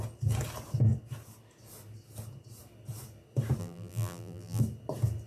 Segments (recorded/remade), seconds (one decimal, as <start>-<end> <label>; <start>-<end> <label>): 0.0-3.6 recorded; 3.6-4.6 remade; 4.6-5.3 recorded